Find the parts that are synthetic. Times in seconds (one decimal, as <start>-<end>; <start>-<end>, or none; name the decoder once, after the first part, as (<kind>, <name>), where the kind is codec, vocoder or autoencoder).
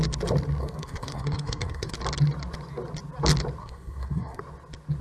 0.6-1.9 (codec, SNAC); 3.6-4.4